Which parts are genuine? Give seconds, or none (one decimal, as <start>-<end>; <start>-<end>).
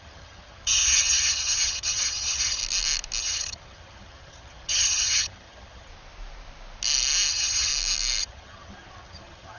2.6-3.2; 5.9-7.3; 7.7-8.2